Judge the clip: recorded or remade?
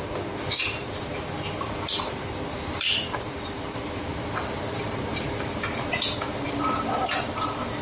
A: remade